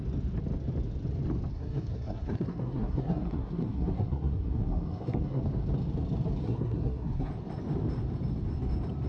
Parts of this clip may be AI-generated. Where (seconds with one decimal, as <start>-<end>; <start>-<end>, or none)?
1.5-5.4; 6.4-7.3